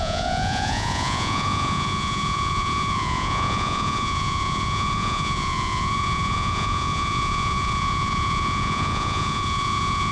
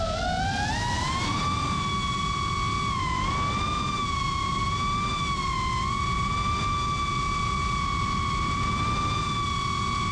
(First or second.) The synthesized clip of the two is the first